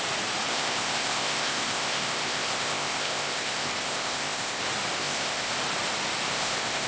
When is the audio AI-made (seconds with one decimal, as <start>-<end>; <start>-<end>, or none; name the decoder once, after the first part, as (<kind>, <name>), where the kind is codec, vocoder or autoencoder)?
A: 0.5-4.6 (codec, ZipCodec); 5.0-5.5; 6.3-6.9

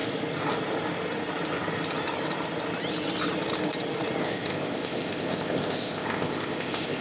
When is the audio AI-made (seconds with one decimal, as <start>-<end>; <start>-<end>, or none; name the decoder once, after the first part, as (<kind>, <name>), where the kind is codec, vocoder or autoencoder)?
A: 4.2-7.0 (codec, ZipCodec)

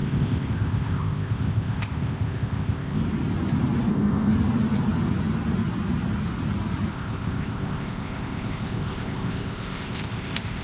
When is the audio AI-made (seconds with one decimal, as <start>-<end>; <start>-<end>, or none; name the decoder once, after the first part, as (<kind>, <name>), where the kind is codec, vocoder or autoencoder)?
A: 0.0-3.0 (codec, ZipCodec); 3.9-4.3; 6.9-10.6

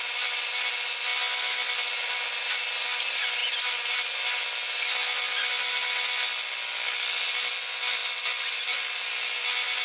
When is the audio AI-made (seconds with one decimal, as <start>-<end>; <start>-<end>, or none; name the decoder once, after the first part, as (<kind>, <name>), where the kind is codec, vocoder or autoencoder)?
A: none

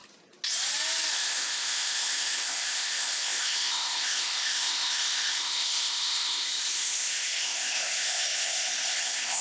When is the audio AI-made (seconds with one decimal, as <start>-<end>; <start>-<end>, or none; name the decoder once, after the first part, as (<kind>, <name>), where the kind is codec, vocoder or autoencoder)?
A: 1.1-9.4 (codec, ZipCodec)

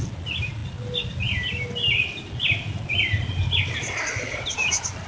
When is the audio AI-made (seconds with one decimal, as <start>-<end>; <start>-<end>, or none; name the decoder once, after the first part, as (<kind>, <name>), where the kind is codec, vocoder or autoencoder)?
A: none